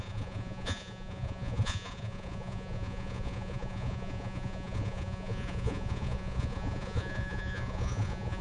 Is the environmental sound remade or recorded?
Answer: remade